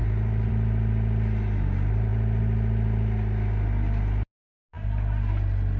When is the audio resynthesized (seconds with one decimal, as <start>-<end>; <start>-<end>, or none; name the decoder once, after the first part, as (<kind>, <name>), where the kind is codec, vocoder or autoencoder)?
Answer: none